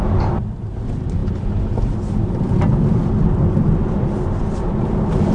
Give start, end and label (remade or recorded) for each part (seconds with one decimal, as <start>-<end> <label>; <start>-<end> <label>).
0.0-5.3 recorded